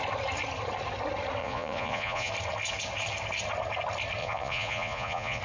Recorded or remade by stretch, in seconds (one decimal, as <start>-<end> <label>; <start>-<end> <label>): 0.0-1.4 recorded; 1.4-2.3 remade; 2.3-4.2 recorded; 4.2-5.4 remade